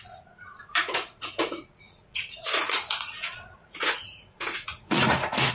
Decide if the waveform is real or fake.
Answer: fake